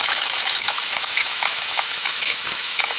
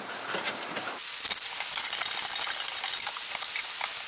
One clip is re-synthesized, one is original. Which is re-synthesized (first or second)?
first